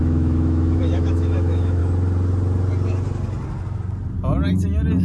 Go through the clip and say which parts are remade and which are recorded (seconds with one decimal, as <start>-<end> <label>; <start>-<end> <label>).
0.0-1.8 remade; 1.8-5.0 recorded

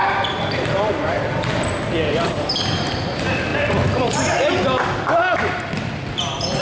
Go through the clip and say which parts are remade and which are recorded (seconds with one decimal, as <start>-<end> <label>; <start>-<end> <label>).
0.0-6.6 recorded

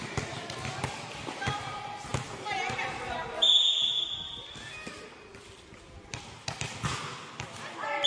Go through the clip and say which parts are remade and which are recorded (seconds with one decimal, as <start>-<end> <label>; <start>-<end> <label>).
0.0-8.1 recorded